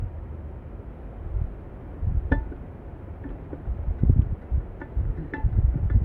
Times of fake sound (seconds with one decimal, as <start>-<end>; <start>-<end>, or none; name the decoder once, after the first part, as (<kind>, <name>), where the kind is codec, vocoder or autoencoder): 0.0-0.9 (vocoder, BigVGAN v2)